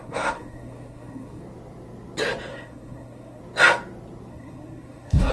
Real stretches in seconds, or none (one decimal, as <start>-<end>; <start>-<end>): 1.4-2.5; 3.4-4.3